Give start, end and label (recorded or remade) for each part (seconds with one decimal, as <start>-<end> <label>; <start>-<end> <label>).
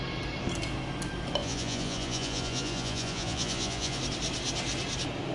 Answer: 0.0-1.4 recorded; 1.4-4.0 remade; 4.0-5.3 recorded